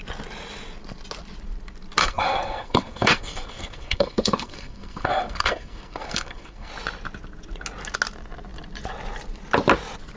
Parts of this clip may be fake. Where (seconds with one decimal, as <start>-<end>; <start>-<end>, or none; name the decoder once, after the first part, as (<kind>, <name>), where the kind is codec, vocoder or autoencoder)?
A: 2.0-6.7 (codec, SNAC)